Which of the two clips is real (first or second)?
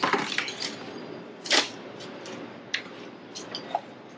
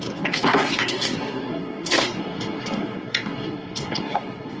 first